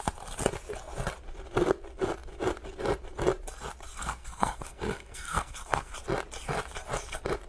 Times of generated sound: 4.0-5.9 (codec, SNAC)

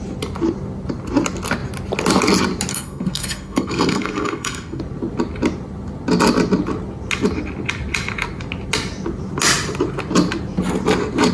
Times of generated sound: 2.7-4.8 (codec, SNAC)

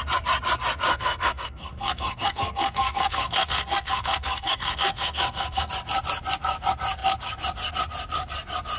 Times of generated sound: 0.9-5.7 (codec, SNAC)

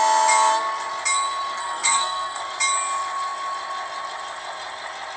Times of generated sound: 1.6-2.4 (codec, SNAC)